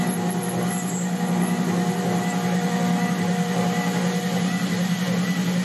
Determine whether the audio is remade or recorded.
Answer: recorded